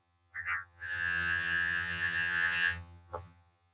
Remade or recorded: remade